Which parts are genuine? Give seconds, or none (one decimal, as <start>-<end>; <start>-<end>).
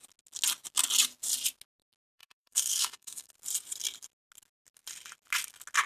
0.0-2.1; 3.3-5.9